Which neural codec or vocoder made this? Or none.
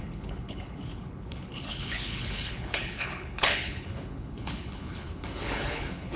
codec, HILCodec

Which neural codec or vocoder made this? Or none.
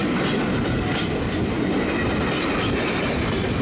none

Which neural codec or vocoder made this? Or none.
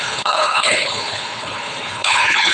codec, HILCodec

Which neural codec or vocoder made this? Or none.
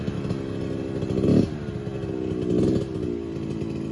none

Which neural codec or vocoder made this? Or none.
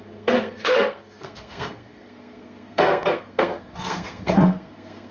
codec, SNAC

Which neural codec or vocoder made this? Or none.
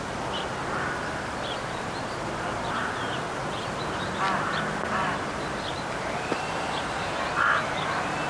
none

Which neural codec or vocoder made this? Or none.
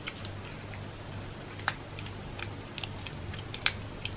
none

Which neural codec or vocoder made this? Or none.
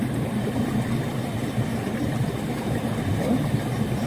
none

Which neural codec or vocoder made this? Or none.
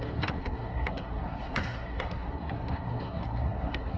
codec, SNAC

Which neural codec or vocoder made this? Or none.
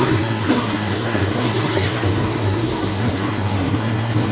codec, SNAC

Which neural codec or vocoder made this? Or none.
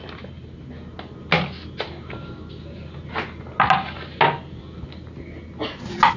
none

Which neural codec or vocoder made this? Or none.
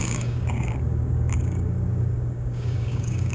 codec, DAC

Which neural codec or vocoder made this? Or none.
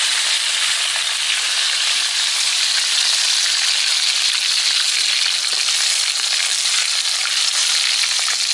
none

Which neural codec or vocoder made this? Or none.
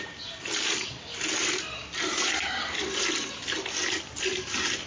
none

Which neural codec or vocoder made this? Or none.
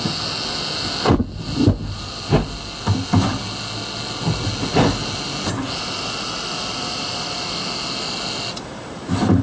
none